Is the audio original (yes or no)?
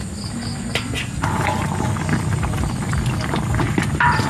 yes